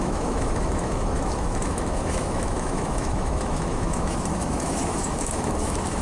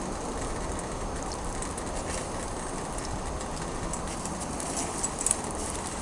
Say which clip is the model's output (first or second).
first